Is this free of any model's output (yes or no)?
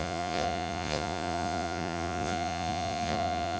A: no